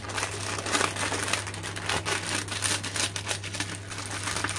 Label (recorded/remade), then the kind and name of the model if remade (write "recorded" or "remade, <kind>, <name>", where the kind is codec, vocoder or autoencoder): recorded